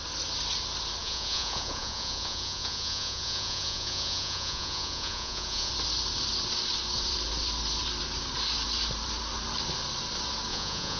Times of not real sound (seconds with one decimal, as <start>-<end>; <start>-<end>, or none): 1.0-5.7; 10.5-11.0